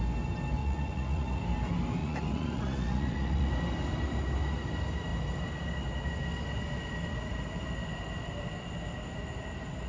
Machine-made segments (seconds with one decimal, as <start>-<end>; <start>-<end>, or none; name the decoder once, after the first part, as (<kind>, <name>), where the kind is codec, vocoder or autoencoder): 0.6-1.4 (vocoder, Vocos); 2.0-3.5